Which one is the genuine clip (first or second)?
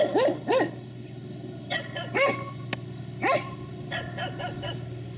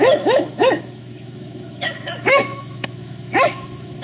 first